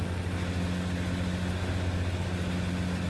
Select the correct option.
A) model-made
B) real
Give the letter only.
B